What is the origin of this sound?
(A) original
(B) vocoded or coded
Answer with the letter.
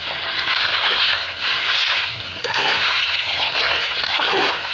B